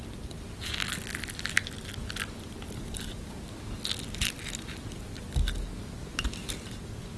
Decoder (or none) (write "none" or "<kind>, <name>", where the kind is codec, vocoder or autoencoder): none